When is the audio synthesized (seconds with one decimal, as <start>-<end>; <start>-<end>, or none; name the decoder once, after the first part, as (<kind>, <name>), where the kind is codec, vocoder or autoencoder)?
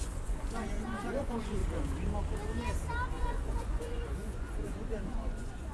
0.0-1.6 (vocoder, Vocos); 3.1-5.7